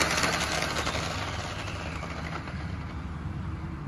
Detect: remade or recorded recorded